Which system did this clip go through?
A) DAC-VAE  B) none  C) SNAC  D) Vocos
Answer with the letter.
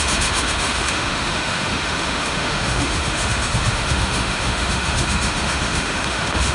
A